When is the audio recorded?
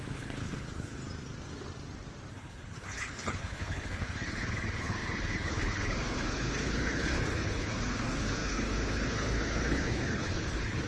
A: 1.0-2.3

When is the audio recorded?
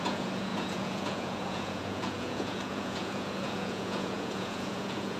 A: none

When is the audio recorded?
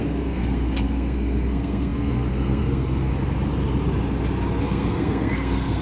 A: 3.1-4.6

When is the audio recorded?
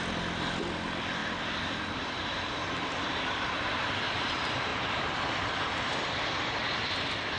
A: 0.0-1.2; 4.3-4.7; 5.5-7.4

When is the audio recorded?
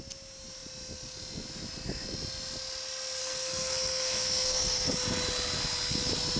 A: 0.0-3.2; 4.9-6.4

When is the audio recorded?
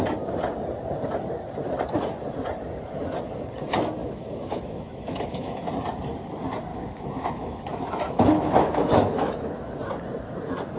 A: 0.0-4.0; 5.7-6.7; 9.8-10.8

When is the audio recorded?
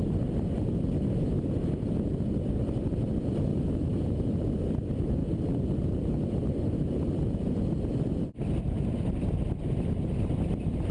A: 0.0-3.5; 4.7-10.9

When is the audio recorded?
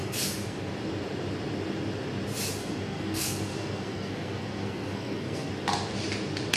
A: 0.7-2.6; 5.5-6.6